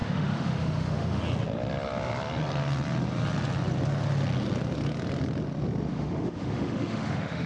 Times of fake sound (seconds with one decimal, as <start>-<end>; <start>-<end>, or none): 0.0-1.2; 5.9-7.5